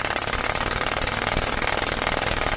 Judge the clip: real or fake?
real